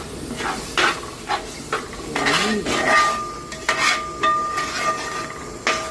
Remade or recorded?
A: recorded